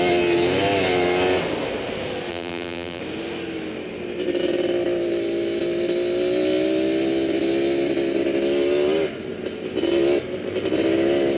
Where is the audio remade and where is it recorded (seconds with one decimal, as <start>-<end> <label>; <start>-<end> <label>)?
0.0-2.3 recorded; 2.3-3.0 remade; 3.0-11.4 recorded